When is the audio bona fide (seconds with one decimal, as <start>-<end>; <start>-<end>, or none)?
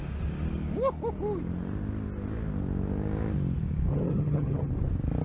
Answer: 0.0-3.9; 4.7-5.2